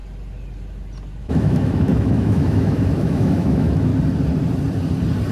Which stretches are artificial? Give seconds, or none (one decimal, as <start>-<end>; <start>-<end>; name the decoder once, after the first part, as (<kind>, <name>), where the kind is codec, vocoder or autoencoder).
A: 1.2-3.9 (autoencoder, DAC-VAE)